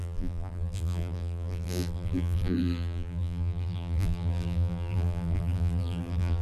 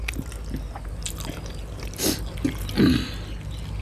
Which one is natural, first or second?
second